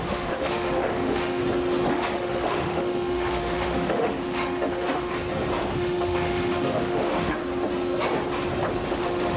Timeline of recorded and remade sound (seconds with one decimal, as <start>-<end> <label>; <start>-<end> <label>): 0.0-1.4 remade; 1.4-1.9 recorded; 1.9-5.1 remade; 5.1-5.7 recorded; 5.7-7.4 remade; 7.4-8.9 recorded; 8.9-9.4 remade